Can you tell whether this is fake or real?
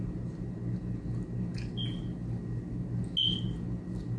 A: real